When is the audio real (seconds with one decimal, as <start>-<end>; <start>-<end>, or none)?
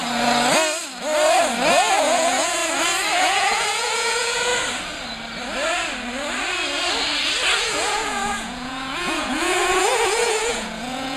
0.0-1.9; 2.6-3.2; 4.5-7.6